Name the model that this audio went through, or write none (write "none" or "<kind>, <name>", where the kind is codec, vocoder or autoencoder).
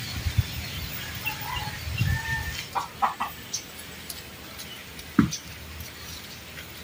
none